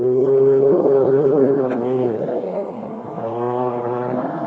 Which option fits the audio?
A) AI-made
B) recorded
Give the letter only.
A